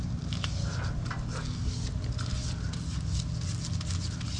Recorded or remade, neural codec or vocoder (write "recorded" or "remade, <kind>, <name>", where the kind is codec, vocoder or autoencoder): recorded